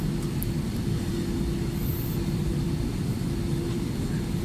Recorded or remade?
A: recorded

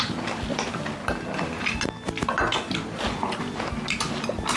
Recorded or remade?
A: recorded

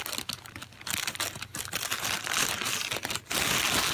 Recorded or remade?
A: recorded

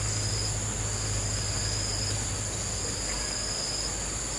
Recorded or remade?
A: recorded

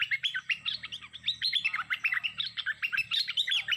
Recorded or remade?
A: remade